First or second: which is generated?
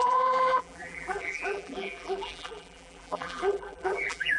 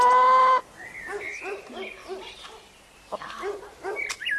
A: first